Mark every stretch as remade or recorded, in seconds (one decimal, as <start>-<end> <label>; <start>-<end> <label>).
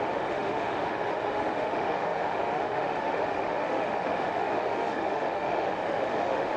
0.0-6.6 remade